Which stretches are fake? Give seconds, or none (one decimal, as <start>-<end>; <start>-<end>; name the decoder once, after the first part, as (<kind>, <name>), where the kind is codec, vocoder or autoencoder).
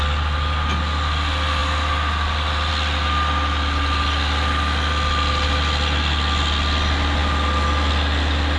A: none